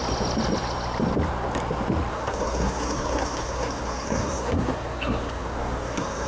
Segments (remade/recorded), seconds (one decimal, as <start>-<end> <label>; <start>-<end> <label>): 0.0-2.1 recorded; 2.1-6.3 remade